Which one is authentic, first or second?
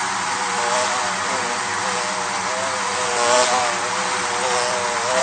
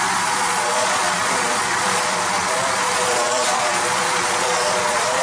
first